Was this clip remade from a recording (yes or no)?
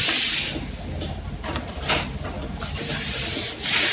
no